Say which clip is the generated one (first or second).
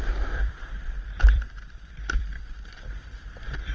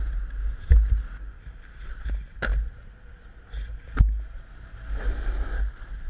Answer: first